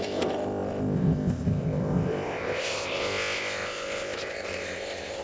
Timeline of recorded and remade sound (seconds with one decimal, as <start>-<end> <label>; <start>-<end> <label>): 0.0-5.2 remade